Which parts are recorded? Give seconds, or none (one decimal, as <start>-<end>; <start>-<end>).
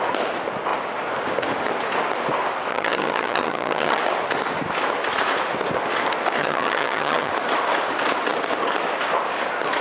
0.0-2.7; 4.0-6.4; 7.3-9.8